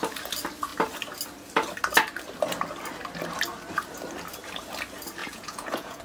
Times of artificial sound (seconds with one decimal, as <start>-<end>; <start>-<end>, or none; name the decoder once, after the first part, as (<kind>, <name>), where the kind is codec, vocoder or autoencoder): 5.2-6.0 (vocoder, Vocos)